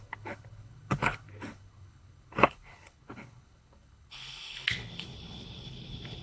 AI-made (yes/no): yes